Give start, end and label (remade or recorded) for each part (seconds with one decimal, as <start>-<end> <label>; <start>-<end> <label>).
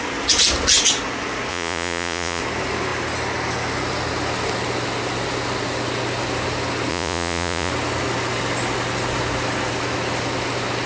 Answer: 0.0-1.5 recorded; 1.5-2.4 remade; 2.4-6.9 recorded; 6.9-7.7 remade; 7.7-10.9 recorded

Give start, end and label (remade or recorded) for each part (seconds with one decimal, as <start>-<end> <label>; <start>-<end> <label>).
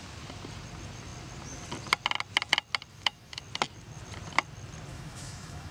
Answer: 0.0-2.9 recorded; 2.9-3.4 remade; 3.4-4.9 recorded; 4.9-5.7 remade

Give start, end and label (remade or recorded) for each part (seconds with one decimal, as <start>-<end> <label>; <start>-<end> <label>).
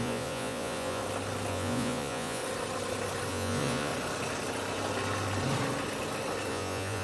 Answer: 0.0-1.0 remade; 1.0-1.5 recorded; 1.5-2.4 remade; 2.4-3.3 recorded; 3.3-3.9 remade; 3.9-6.5 recorded; 6.5-7.0 remade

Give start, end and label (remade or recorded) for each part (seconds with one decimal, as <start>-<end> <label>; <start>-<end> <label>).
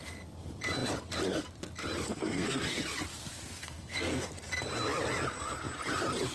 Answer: 0.0-2.1 recorded; 2.1-2.6 remade; 2.6-3.6 recorded; 3.6-4.3 remade; 4.3-6.3 recorded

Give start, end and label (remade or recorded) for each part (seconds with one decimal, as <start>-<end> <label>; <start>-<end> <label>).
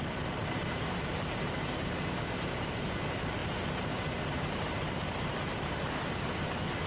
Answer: 0.0-0.4 recorded; 0.4-2.0 remade; 2.0-5.5 recorded; 5.5-6.3 remade; 6.3-6.9 recorded